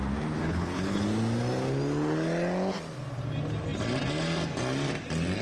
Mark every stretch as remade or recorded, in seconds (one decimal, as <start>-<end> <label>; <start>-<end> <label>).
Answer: 0.0-0.4 recorded; 0.4-1.0 remade; 1.0-5.4 recorded